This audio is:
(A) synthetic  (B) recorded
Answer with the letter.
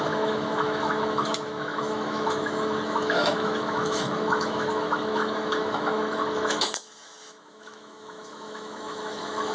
A